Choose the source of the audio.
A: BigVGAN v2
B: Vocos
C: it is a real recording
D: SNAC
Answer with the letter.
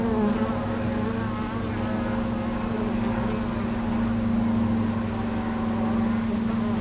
C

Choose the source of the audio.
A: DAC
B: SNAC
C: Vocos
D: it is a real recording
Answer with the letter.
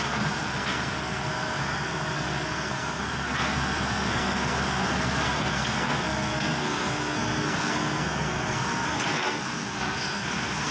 B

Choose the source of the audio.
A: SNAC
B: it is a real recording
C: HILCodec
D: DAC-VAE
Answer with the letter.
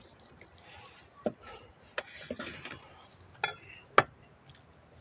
B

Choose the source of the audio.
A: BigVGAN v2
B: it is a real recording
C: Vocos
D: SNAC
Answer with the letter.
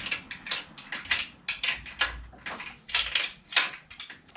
B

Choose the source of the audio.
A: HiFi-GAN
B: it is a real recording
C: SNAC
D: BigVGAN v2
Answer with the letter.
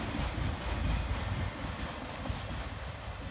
B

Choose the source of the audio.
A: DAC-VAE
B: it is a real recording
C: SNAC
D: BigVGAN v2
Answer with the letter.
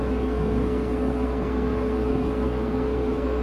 C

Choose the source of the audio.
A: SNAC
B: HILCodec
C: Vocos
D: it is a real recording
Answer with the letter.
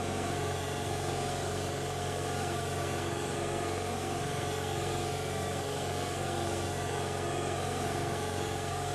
A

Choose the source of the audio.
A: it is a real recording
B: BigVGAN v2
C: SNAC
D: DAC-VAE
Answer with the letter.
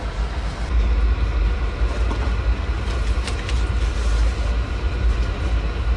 A